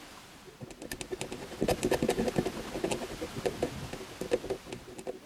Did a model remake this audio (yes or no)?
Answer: no